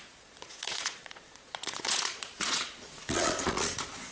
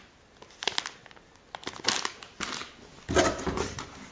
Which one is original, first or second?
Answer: second